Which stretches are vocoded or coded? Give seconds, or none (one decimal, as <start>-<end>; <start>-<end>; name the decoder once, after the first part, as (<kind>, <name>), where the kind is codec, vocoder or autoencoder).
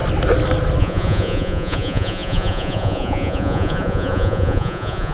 0.8-5.1 (vocoder, Vocos)